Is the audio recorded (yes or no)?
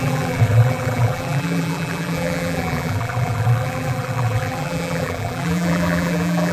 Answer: no